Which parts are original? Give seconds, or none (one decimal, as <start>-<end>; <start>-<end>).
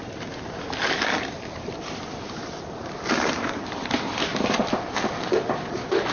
0.0-6.1